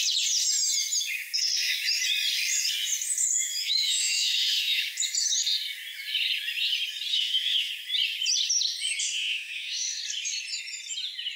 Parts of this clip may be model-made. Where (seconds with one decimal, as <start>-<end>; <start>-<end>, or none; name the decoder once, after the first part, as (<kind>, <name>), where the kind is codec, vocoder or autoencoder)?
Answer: 3.6-4.8 (autoencoder, DAC-VAE); 7.1-7.7; 9.0-10.0